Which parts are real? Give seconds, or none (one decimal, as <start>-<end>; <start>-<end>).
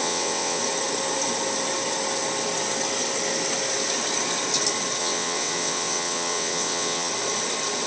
0.6-5.0; 7.1-7.9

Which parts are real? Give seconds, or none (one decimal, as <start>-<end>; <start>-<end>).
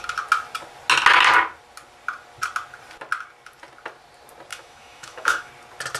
0.0-4.5; 5.5-6.0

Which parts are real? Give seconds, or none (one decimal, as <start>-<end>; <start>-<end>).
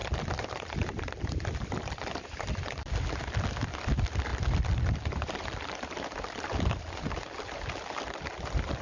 none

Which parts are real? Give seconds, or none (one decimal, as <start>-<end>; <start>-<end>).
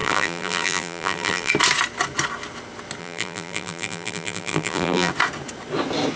1.5-3.0; 5.1-6.2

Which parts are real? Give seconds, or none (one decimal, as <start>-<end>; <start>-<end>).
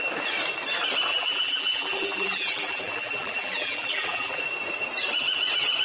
0.0-1.1; 4.4-5.8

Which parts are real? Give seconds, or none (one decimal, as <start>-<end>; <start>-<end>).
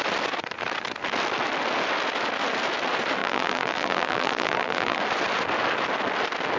0.0-3.2; 5.0-6.6